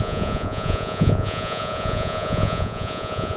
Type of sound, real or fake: fake